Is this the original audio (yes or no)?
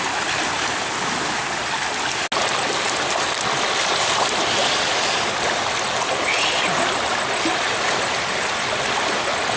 yes